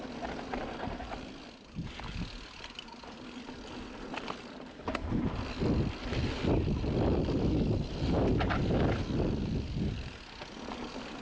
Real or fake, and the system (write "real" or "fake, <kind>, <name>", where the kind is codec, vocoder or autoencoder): real